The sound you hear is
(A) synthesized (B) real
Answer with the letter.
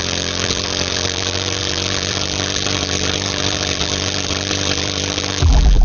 A